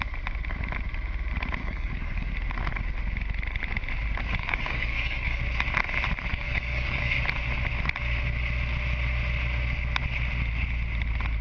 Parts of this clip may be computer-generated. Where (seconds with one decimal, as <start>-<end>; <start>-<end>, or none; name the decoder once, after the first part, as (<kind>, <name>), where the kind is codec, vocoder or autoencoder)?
1.6-2.3 (codec, DAC); 4.4-5.4; 6.3-7.1

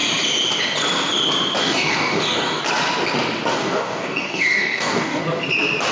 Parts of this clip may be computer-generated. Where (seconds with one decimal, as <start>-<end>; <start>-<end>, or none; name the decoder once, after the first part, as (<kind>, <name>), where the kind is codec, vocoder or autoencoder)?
1.6-2.6 (codec, DAC); 3.5-5.2

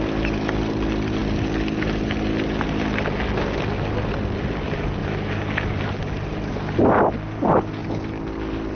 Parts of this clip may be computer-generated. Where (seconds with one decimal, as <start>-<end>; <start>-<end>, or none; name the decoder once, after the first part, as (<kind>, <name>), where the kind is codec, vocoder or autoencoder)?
none

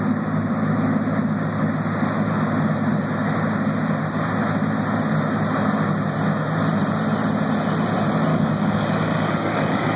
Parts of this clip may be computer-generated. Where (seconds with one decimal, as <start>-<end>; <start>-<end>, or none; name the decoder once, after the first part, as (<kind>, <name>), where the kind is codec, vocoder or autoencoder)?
8.3-10.0 (codec, DAC)

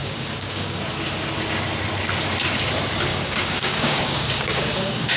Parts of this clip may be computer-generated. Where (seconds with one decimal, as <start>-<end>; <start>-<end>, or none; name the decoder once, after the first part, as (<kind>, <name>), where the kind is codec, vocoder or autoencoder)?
0.0-0.8 (codec, DAC); 3.1-5.2